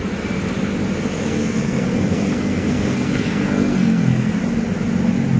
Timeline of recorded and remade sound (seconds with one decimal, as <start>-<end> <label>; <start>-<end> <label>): 0.0-1.2 recorded; 1.2-4.4 remade; 4.4-5.4 recorded